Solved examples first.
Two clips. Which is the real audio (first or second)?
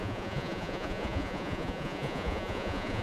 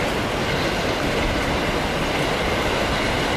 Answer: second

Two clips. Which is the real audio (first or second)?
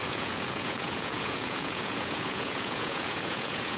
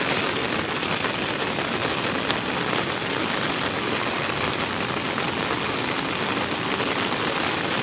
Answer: second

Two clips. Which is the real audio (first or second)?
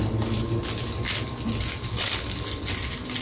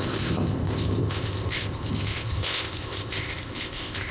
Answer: first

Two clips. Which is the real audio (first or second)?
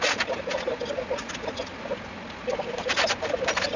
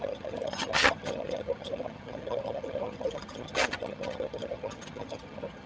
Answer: first